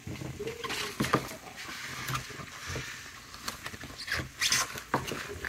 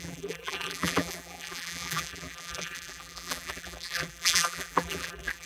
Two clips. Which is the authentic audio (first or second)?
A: first